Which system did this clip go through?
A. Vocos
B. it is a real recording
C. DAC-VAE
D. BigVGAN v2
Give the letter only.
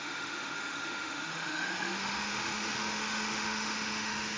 C